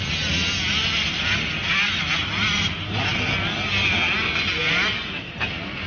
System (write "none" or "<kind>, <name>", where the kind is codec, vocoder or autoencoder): none